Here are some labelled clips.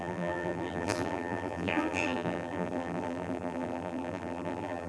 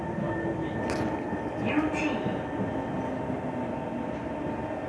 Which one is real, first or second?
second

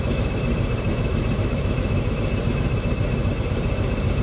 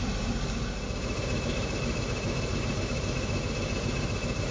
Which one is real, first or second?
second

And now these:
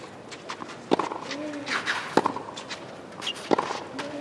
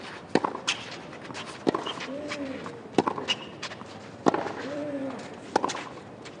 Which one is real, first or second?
first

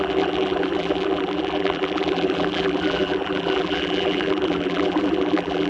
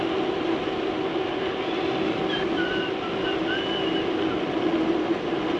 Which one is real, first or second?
second